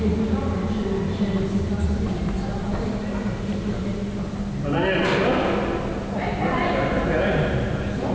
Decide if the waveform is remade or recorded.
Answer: recorded